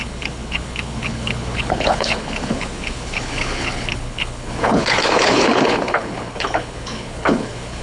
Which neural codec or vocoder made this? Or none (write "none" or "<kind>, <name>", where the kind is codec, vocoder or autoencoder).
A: codec, HILCodec